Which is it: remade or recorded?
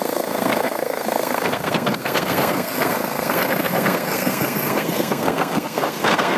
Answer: remade